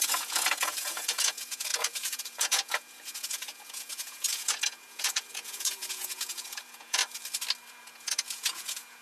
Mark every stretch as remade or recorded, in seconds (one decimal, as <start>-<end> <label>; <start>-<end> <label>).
0.0-7.0 remade; 7.0-7.7 recorded; 7.7-9.0 remade